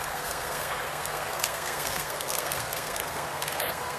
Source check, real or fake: fake